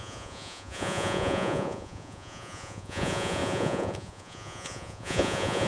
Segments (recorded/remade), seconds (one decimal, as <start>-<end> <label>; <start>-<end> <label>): 0.0-5.7 remade